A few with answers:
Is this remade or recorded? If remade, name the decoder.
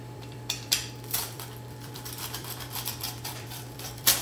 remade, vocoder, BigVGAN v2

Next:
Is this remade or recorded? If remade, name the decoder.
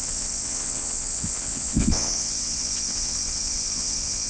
remade, vocoder, WaveNeXt